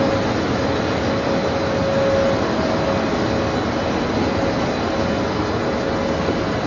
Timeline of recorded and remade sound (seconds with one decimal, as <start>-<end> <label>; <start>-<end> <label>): 0.0-6.7 recorded